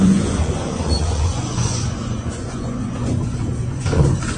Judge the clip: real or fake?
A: fake